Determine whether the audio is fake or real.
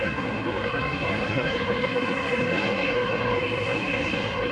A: fake